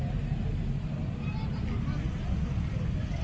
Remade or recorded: recorded